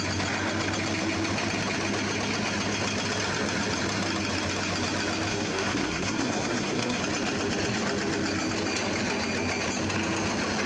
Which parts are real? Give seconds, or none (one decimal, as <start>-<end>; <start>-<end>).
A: 0.0-5.3; 7.0-10.7